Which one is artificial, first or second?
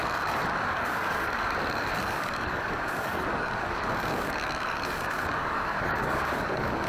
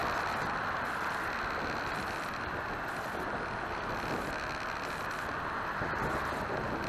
first